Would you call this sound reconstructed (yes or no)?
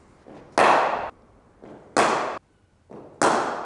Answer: no